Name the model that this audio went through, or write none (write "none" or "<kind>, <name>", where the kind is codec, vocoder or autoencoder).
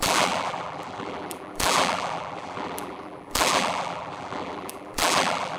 vocoder, BigVGAN v2